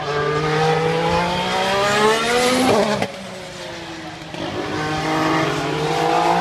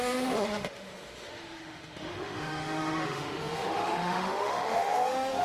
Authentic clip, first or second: first